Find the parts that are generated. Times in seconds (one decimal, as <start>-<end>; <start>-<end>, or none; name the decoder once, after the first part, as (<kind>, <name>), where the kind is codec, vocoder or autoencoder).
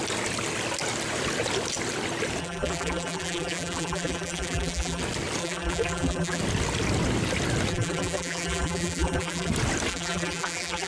2.4-5.0 (vocoder, BigVGAN v2); 5.4-6.4; 7.7-9.5; 9.9-10.9